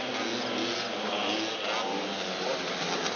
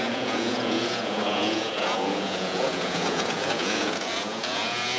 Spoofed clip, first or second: second